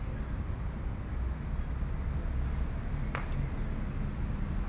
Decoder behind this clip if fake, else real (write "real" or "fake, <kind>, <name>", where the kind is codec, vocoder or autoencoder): real